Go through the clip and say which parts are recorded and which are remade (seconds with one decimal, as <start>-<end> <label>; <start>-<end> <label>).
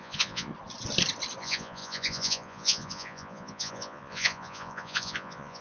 0.0-0.5 remade; 0.5-1.4 recorded; 1.4-5.6 remade